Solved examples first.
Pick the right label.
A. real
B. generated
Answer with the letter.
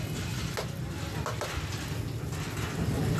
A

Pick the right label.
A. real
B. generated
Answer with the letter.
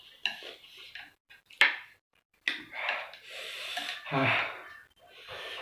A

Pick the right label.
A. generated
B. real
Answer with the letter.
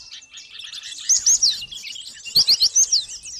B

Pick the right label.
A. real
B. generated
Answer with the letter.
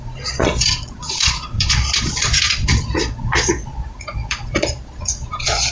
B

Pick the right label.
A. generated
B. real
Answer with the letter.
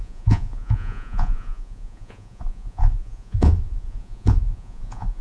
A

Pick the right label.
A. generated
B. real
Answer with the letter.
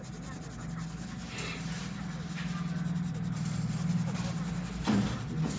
B